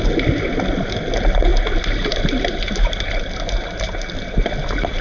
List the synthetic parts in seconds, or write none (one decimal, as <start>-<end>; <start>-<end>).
none